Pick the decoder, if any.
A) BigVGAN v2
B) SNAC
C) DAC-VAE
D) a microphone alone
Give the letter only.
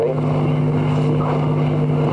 D